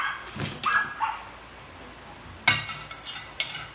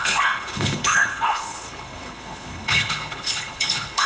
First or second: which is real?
first